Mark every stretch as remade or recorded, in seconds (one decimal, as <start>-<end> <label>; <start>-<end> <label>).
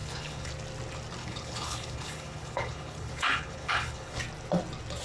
0.0-0.5 remade; 0.5-1.2 recorded; 1.2-4.2 remade; 4.2-5.0 recorded